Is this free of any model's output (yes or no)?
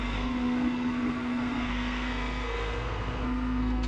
no